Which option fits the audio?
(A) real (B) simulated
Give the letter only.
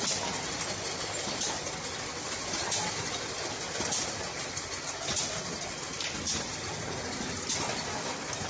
A